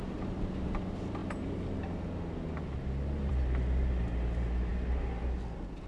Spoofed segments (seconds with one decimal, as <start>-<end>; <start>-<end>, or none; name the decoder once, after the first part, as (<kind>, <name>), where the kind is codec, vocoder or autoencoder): none